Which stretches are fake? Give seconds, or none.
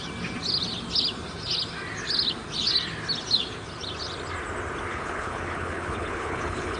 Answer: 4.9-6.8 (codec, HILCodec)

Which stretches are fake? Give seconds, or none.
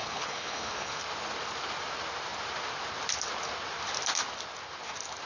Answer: 0.0-1.0 (codec, HILCodec)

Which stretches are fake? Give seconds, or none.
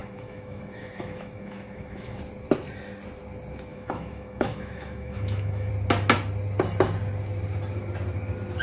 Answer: 0.0-2.2 (autoencoder, DAC-VAE); 3.7-5.7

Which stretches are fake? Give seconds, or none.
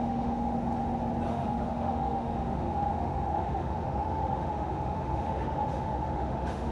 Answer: 0.0-0.5 (autoencoder, DAC-VAE); 1.3-6.7